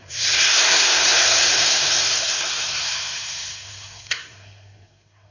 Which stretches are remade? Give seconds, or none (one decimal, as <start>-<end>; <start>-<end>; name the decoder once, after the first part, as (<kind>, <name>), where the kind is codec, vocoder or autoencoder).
0.0-5.3 (codec, SNAC)